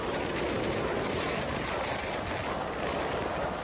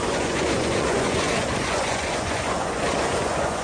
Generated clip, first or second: second